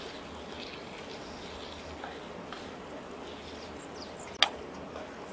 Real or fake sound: real